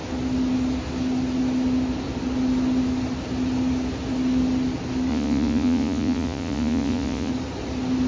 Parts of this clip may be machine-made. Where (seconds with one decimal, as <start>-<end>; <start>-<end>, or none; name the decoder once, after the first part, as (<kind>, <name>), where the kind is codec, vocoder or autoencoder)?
5.1-7.3 (vocoder, Vocos)